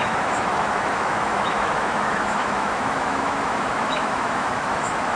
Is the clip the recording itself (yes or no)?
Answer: no